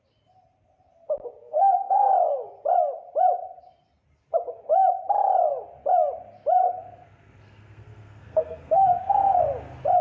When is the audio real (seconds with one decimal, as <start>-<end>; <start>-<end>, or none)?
0.0-1.4; 2.1-6.6; 9.4-10.0